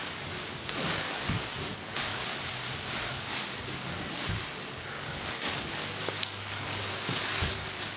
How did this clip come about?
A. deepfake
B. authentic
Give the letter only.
A